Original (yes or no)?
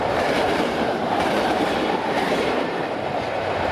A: no